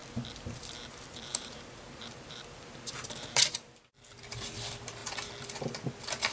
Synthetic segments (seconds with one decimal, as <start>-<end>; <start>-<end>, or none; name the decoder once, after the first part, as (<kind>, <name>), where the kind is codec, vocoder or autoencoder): 0.0-6.3 (vocoder, BigVGAN v2)